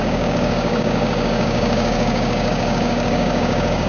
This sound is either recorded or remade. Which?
remade